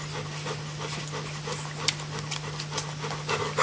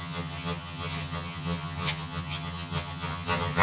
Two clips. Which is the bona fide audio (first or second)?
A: first